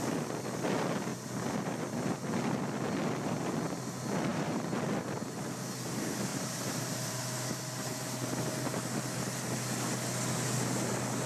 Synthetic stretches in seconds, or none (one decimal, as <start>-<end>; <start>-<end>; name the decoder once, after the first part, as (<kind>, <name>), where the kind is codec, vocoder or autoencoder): 4.3-5.5 (vocoder, BigVGAN v2); 6.3-7.2